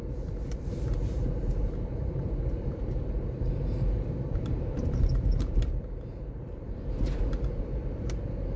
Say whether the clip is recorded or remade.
remade